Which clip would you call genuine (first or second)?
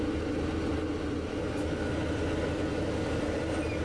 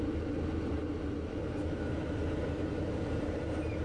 first